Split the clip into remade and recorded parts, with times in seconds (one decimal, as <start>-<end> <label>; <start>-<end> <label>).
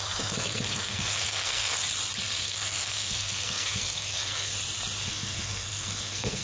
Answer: 0.0-1.7 remade; 1.7-2.4 recorded; 2.4-4.5 remade; 4.5-5.1 recorded; 5.1-6.4 remade